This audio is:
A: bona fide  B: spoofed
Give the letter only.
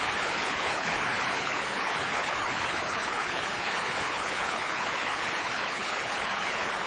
B